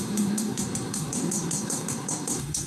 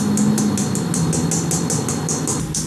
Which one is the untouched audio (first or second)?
second